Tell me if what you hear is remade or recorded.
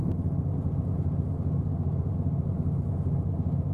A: recorded